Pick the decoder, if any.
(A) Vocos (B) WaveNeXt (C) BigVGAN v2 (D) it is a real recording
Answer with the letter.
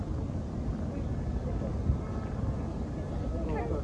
D